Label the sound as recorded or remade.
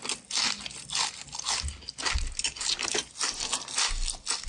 recorded